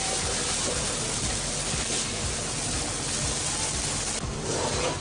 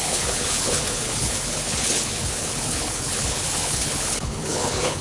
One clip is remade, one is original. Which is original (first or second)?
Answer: first